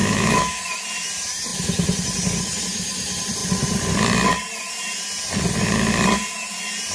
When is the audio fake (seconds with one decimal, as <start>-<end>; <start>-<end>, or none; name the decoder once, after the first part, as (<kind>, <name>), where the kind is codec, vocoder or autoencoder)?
0.0-0.6 (autoencoder, DAC-VAE)

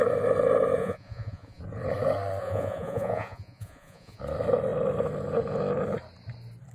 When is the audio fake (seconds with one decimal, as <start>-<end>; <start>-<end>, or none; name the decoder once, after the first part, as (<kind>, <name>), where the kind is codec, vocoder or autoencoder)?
0.8-1.6 (vocoder, Vocos); 2.4-4.2

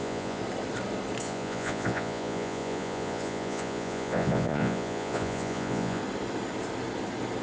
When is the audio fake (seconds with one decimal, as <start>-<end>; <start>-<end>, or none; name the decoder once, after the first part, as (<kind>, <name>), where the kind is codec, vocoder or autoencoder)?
0.0-0.4 (vocoder, Vocos); 1.2-6.0

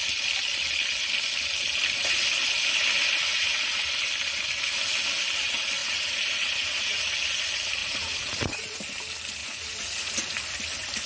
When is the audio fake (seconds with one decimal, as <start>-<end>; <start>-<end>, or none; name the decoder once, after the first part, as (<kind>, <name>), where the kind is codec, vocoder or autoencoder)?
3.3-4.0 (vocoder, Vocos); 5.8-7.1; 7.8-8.8; 9.4-10.1

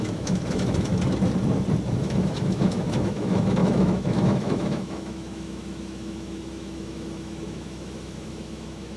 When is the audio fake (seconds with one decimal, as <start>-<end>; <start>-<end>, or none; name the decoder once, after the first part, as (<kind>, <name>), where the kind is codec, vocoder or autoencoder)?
0.0-0.9 (autoencoder, DAC-VAE); 2.0-9.0

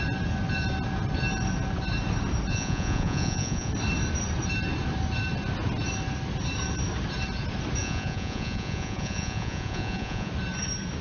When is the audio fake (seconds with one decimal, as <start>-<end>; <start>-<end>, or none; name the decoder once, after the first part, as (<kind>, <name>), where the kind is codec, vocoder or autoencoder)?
2.5-3.7 (vocoder, Vocos); 7.8-10.3